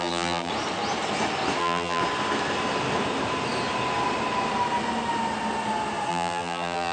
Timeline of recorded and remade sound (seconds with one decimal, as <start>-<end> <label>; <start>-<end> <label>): 0.0-0.5 remade; 0.5-1.6 recorded; 1.6-2.0 remade; 2.0-6.1 recorded; 6.1-6.9 remade